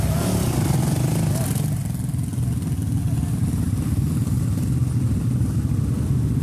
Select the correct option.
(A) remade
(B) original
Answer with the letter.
B